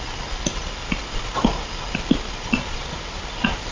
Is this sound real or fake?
real